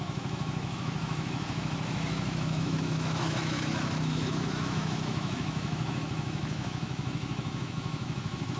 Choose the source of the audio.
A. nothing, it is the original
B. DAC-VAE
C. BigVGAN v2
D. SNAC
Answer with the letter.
B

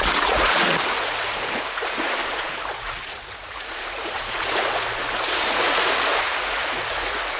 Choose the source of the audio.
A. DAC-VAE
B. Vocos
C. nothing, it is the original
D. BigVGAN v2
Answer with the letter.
B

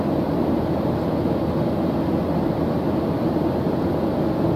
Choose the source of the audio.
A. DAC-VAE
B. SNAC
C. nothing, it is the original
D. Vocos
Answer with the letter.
C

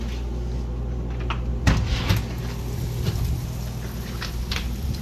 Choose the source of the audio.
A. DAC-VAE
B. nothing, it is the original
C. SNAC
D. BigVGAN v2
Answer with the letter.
B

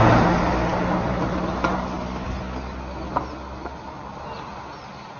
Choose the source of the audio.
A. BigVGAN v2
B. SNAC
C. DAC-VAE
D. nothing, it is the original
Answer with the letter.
D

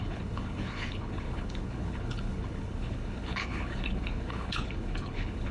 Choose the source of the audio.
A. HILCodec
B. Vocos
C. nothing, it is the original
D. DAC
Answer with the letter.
A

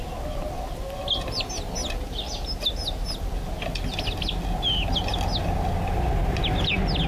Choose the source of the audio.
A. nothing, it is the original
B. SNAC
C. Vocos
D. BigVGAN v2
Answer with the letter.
A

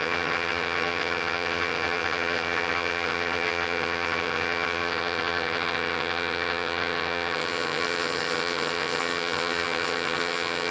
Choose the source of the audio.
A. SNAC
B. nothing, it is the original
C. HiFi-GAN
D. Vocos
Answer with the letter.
C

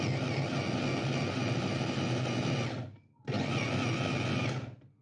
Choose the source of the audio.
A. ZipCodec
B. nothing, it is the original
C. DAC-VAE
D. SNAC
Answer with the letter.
B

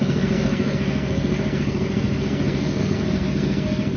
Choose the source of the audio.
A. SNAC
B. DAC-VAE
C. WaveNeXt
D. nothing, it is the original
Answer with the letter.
A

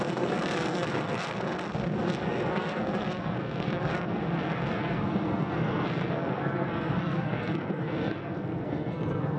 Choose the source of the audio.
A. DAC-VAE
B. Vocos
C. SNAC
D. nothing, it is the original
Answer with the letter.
C